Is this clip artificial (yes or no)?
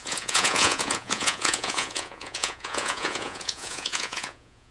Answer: yes